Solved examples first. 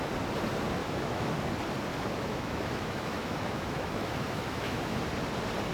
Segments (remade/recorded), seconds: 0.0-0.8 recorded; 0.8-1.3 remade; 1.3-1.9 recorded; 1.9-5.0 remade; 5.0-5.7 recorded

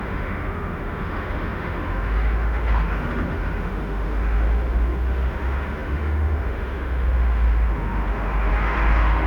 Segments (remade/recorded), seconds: 0.0-9.3 remade

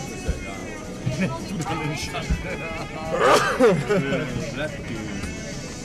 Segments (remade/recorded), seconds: 0.0-5.8 recorded

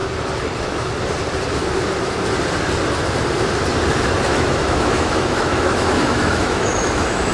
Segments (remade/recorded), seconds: 0.0-4.3 recorded; 4.3-7.3 remade

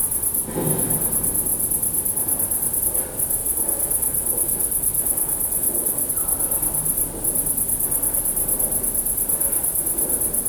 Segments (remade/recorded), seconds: 0.0-3.4 recorded; 3.4-6.1 remade; 6.1-10.5 recorded

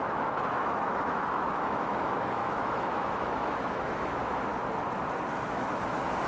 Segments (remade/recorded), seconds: 0.0-4.5 remade; 4.5-5.3 recorded; 5.3-6.3 remade

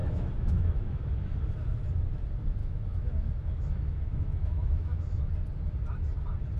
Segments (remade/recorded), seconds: 0.0-1.0 remade; 1.0-2.6 recorded; 2.6-5.3 remade; 5.3-6.6 recorded

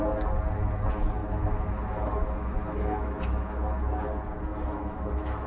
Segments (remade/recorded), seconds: 0.0-1.2 recorded; 1.2-3.7 remade; 3.7-4.5 recorded; 4.5-5.5 remade